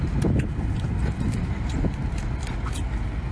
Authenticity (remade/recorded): recorded